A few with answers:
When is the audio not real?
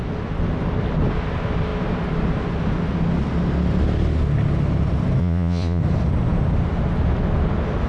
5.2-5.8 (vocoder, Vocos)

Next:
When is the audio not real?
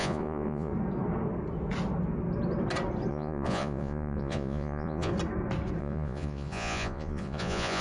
0.0-0.7 (vocoder, Vocos); 3.1-5.1; 5.8-7.8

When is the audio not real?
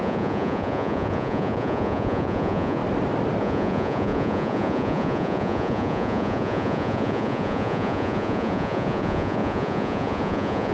0.0-2.8 (vocoder, Vocos); 3.4-10.7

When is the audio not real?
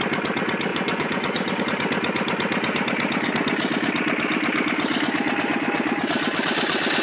0.7-1.6 (vocoder, Vocos)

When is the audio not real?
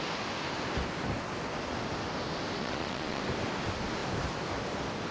2.6-3.2 (vocoder, Vocos)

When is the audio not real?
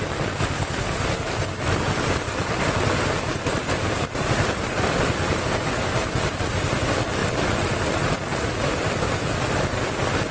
none